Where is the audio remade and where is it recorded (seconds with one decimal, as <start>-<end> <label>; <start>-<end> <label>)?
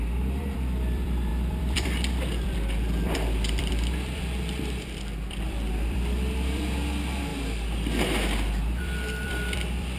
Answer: 0.0-7.3 remade; 7.3-8.8 recorded; 8.8-10.0 remade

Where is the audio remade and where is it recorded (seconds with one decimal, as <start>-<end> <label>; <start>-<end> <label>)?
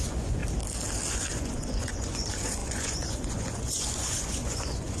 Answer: 0.0-0.4 remade; 0.4-1.1 recorded; 1.1-5.0 remade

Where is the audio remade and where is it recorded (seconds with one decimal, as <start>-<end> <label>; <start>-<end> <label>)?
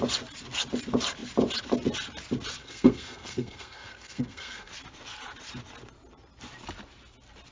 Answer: 0.0-2.6 recorded; 2.6-4.7 remade; 4.7-7.5 recorded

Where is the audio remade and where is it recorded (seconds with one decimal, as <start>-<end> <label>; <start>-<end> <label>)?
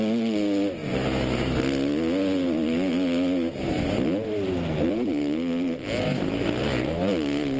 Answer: 0.0-7.6 recorded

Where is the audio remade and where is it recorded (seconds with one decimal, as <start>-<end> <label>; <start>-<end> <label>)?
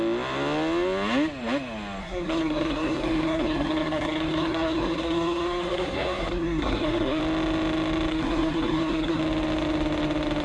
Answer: 0.0-2.0 recorded; 2.0-7.2 remade; 7.2-8.1 recorded; 8.1-9.2 remade; 9.2-10.4 recorded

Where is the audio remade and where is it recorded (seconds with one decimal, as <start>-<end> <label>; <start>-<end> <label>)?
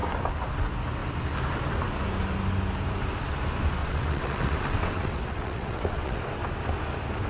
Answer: 0.0-3.8 recorded; 3.8-6.2 remade; 6.2-7.3 recorded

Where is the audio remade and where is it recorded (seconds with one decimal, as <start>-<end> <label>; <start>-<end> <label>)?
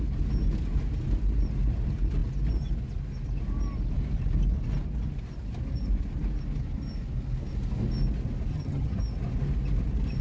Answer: 0.0-8.5 recorded; 8.5-9.0 remade; 9.0-10.2 recorded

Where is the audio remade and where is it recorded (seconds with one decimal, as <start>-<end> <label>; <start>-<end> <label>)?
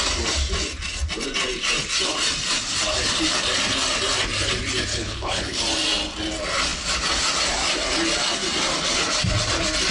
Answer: 0.0-4.9 recorded; 4.9-5.6 remade; 5.6-9.9 recorded